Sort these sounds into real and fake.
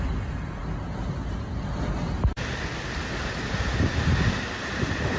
real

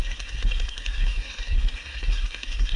fake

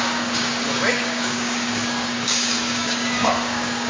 fake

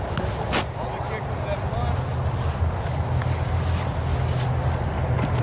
real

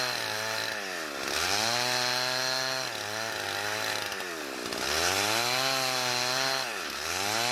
real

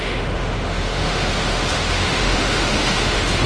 fake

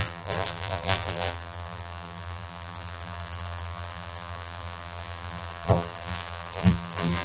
fake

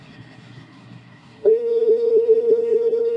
fake